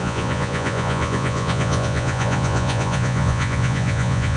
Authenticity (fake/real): fake